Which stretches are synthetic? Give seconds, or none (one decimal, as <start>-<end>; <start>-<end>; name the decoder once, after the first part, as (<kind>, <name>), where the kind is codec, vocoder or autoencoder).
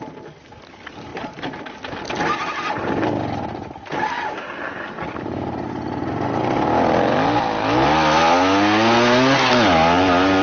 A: 1.1-1.6 (vocoder, BigVGAN v2)